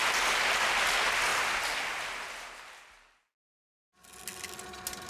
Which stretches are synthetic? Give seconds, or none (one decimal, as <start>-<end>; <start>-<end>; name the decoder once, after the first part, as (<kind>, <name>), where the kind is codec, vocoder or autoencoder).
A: none

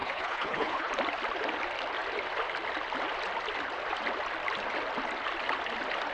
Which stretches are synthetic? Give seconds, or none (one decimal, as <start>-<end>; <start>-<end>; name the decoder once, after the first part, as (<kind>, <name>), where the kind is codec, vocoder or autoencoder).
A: 0.0-0.9 (codec, HILCodec)

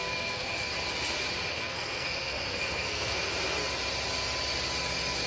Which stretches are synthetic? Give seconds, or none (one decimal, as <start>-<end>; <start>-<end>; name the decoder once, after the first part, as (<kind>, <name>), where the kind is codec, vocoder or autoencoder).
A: 0.0-0.7 (codec, SNAC); 1.5-3.3